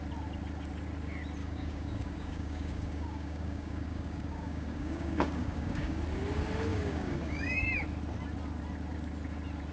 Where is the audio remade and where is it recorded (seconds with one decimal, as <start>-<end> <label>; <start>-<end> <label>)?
0.0-1.4 recorded; 1.4-6.0 remade; 6.0-6.7 recorded; 6.7-7.6 remade; 7.6-9.7 recorded